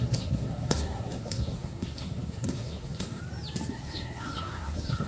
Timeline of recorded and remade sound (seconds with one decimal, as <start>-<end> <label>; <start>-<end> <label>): 0.0-3.2 remade; 3.2-3.7 recorded; 3.7-5.1 remade